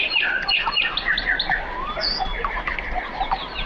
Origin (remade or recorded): recorded